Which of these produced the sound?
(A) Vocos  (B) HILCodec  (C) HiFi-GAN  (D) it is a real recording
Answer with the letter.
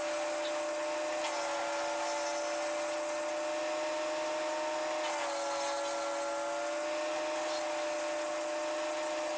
D